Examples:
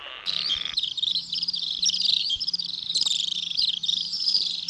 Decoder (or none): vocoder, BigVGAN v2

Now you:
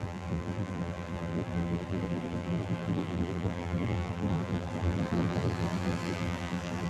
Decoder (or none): vocoder, BigVGAN v2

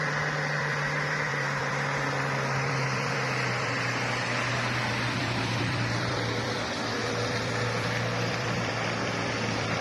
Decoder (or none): vocoder, BigVGAN v2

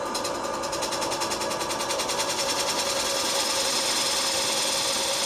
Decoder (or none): none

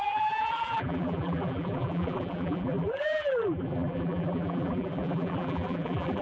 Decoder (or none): vocoder, BigVGAN v2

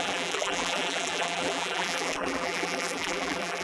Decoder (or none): vocoder, BigVGAN v2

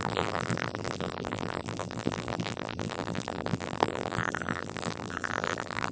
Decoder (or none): vocoder, BigVGAN v2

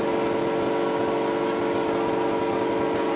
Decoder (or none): none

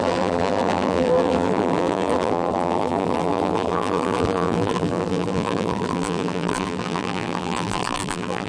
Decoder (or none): vocoder, BigVGAN v2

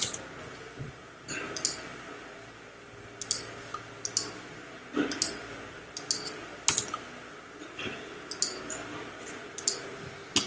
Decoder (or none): none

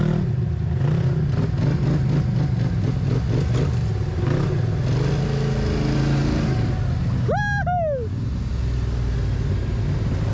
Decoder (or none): none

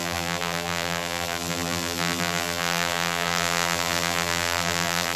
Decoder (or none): vocoder, BigVGAN v2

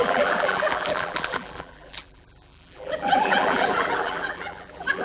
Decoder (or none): vocoder, BigVGAN v2